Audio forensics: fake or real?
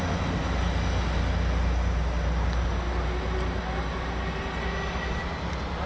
real